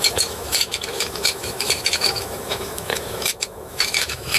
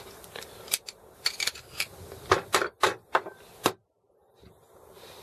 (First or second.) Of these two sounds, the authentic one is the second